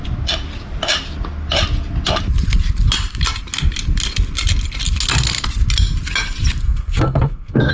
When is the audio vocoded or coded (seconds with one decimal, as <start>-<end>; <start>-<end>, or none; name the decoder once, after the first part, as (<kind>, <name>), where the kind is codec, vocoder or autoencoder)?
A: 6.6-7.7 (codec, SNAC)